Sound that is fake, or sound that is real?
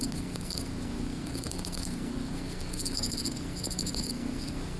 fake